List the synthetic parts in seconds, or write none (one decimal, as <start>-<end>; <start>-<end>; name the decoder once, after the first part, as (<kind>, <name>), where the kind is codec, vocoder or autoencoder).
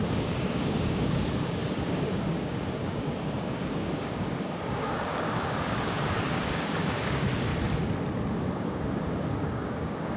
0.0-7.5 (codec, DAC); 8.3-10.2